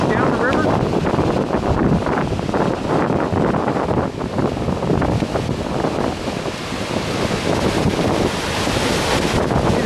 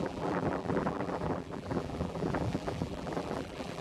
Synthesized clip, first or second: second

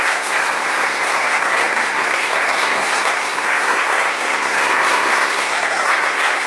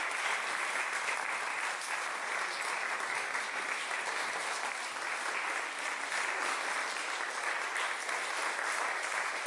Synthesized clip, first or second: first